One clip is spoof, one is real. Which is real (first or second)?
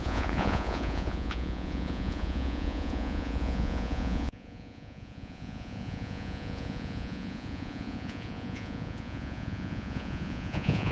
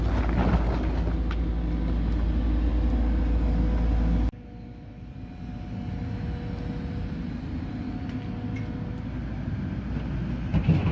second